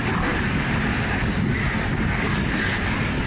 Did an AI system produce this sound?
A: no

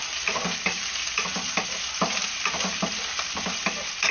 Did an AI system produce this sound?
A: yes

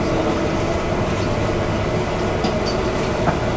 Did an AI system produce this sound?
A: no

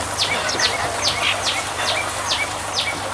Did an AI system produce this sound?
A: no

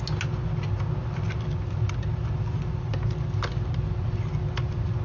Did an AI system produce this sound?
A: no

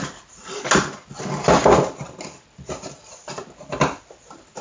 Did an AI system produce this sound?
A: no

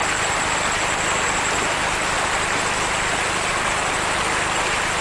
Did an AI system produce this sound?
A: no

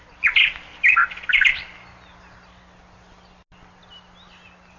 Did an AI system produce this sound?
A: no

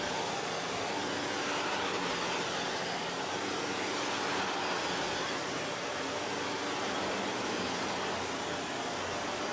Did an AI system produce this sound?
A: no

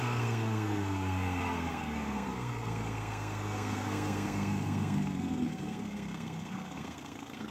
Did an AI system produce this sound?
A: yes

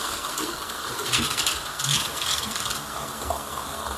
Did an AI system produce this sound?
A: yes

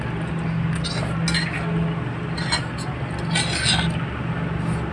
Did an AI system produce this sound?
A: no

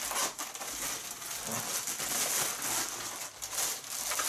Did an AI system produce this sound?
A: no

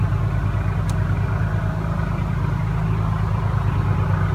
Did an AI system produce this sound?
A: no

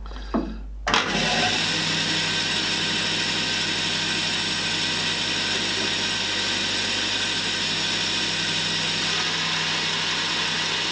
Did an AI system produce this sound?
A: no